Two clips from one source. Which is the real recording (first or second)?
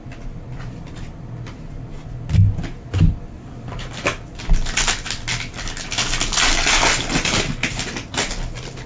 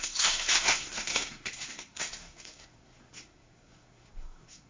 first